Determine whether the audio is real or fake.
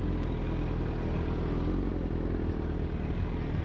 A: real